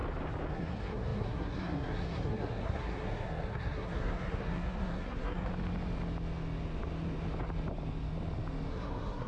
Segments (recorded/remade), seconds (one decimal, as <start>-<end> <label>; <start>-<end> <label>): 0.0-0.5 recorded; 0.5-5.5 remade; 5.5-8.7 recorded; 8.7-9.3 remade